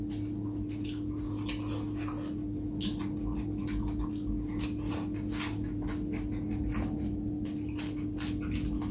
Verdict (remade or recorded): recorded